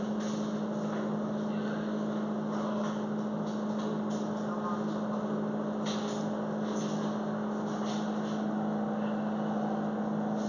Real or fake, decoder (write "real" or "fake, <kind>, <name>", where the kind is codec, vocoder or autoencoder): real